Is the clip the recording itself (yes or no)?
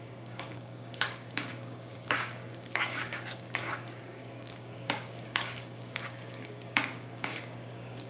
no